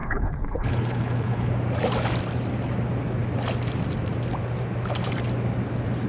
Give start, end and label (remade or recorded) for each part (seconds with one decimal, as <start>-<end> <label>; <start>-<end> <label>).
0.0-1.5 remade; 1.5-6.1 recorded